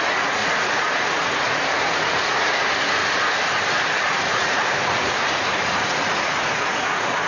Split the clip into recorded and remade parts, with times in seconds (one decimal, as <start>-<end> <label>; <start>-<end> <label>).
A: 0.0-3.0 remade; 3.0-3.7 recorded; 3.7-7.3 remade